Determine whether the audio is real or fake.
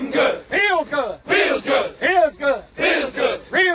real